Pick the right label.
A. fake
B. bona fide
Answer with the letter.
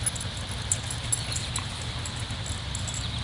B